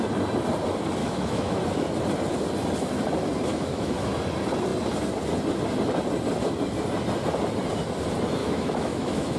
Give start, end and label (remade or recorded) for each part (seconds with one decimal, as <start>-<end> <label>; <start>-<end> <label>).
0.0-1.0 recorded; 1.0-1.6 remade; 1.6-3.5 recorded; 3.5-4.1 remade; 4.1-8.4 recorded; 8.4-9.4 remade